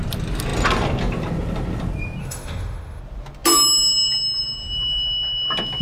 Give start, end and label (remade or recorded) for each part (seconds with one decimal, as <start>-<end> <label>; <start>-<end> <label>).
0.0-2.2 recorded; 2.2-3.0 remade; 3.0-5.8 recorded